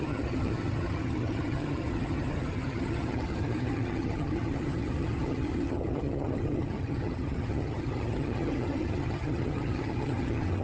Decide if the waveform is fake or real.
fake